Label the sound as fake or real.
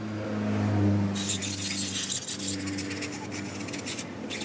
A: real